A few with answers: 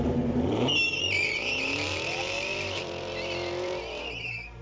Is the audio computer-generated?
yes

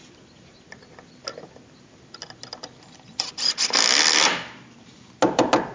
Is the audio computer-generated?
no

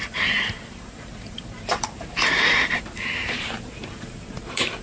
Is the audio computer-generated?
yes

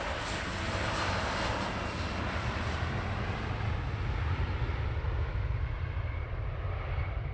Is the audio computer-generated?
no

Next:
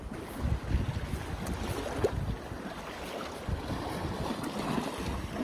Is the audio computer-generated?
no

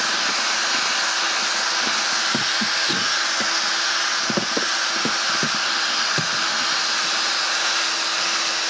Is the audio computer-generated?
no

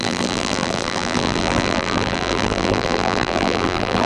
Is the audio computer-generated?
yes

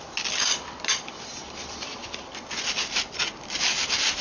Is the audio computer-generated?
yes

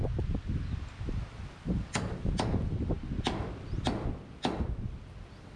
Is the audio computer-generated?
no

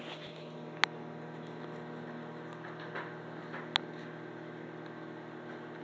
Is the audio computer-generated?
no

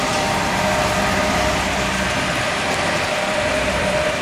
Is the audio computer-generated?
yes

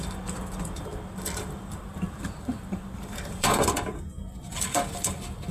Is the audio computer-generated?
yes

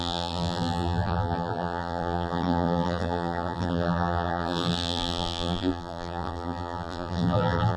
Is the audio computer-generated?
yes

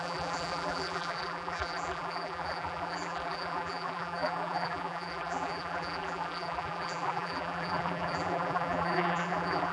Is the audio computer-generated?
yes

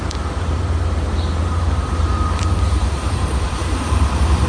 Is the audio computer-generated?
yes